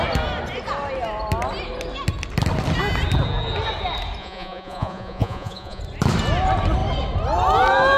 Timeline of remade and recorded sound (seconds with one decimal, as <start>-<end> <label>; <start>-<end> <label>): 0.0-4.2 recorded; 4.2-5.8 remade; 5.8-8.0 recorded